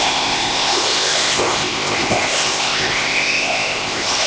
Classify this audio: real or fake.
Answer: fake